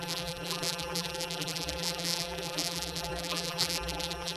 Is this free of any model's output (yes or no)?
no